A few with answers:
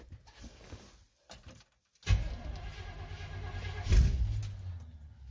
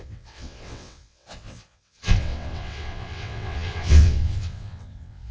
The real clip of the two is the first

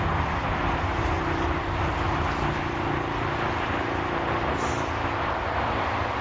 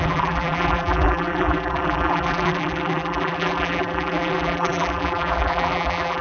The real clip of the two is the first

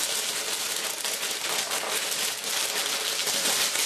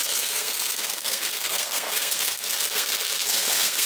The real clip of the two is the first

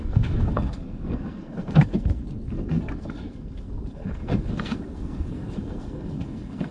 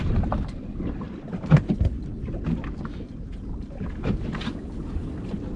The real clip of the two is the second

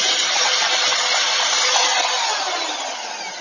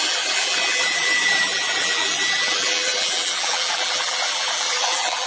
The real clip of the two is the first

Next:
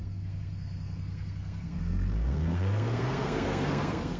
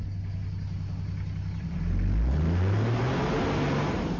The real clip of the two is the second